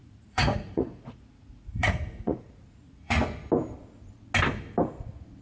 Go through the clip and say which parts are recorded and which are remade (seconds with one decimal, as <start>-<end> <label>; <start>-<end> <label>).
0.0-3.2 remade; 3.2-5.4 recorded